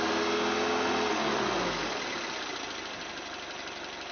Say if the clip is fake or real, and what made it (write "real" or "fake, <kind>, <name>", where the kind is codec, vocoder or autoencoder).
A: real